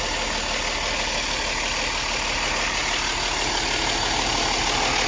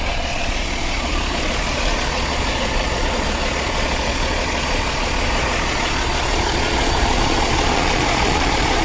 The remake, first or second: second